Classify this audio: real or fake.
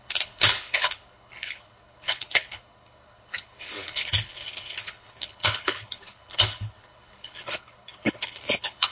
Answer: fake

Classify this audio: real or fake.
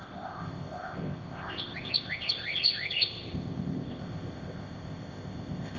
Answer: fake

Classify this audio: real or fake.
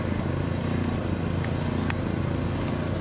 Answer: real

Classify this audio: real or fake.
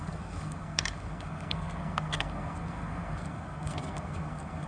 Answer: fake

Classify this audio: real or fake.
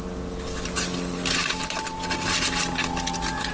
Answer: real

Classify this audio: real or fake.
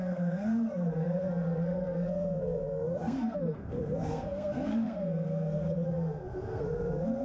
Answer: fake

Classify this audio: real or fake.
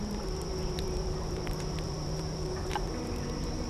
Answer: fake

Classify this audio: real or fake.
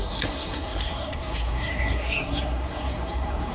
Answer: fake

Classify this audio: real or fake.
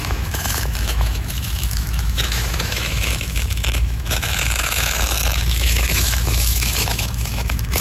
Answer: fake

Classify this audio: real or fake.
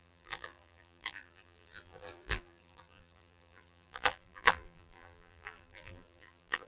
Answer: fake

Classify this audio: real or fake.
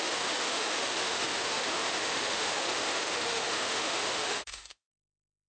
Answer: fake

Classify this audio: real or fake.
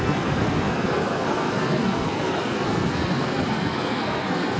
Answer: fake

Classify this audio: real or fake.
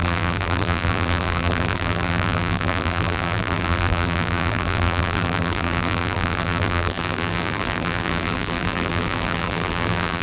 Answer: fake